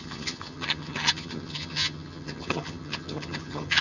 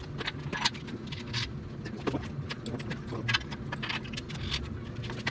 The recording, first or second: second